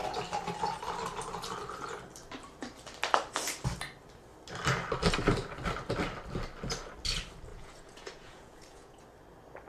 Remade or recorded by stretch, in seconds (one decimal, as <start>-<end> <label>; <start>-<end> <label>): 0.0-7.5 recorded; 7.5-9.0 remade; 9.0-9.7 recorded